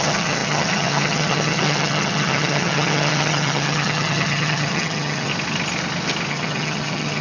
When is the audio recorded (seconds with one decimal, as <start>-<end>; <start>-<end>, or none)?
5.3-6.3